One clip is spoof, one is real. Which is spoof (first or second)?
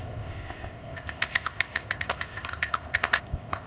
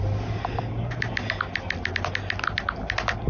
first